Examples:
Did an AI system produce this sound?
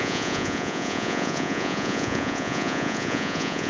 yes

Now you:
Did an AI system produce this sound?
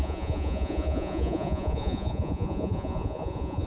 yes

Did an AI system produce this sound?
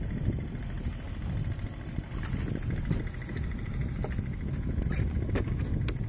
no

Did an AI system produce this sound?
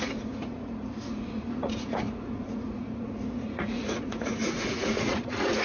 yes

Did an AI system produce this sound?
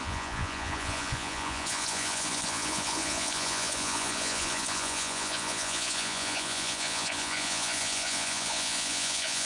yes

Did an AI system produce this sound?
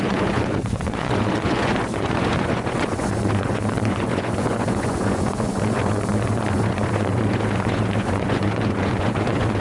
yes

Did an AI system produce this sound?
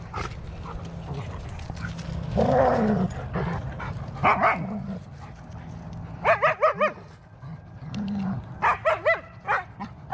no